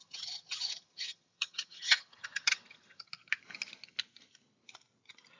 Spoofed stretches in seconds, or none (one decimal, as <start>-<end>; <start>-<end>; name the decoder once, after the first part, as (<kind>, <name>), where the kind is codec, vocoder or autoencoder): 0.0-3.1 (vocoder, HiFi-GAN)

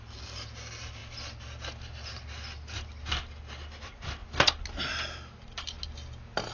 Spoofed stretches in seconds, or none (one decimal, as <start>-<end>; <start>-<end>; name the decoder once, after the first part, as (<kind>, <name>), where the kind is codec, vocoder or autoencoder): none

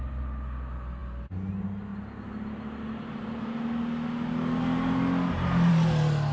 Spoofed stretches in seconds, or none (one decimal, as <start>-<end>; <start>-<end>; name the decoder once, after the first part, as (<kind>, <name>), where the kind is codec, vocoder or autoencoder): none

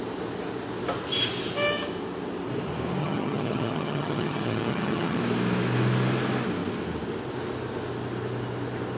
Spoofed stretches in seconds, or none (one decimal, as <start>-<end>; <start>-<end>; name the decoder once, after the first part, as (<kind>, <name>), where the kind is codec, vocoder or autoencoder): 3.0-5.2 (vocoder, HiFi-GAN)

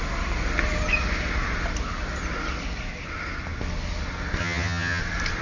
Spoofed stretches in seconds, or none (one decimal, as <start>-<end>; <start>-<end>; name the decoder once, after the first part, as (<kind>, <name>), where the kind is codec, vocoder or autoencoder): 4.4-5.0 (vocoder, HiFi-GAN)

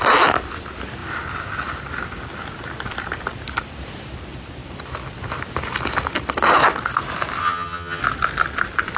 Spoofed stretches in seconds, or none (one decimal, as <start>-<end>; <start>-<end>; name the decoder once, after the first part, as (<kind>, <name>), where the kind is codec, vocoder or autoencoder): 7.4-8.0 (vocoder, HiFi-GAN)

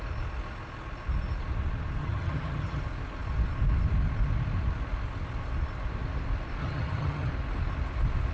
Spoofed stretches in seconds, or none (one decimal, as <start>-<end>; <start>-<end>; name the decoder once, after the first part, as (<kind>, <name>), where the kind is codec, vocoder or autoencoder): 2.0-2.8 (vocoder, HiFi-GAN); 6.6-7.3